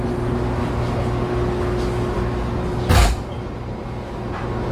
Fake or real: real